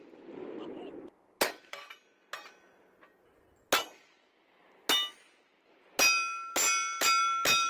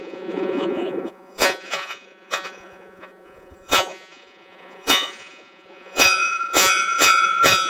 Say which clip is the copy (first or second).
second